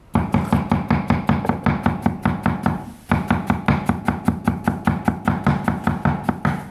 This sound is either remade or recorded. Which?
recorded